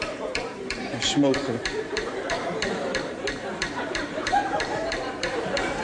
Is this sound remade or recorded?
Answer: remade